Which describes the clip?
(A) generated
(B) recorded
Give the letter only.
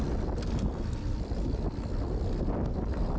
B